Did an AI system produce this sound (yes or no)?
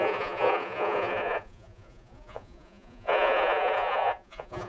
yes